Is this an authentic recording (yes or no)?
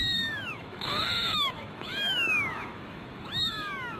no